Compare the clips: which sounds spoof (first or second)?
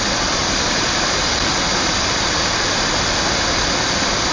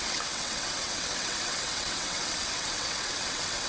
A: second